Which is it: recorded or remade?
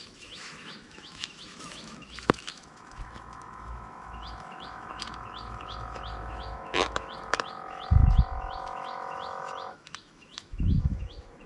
remade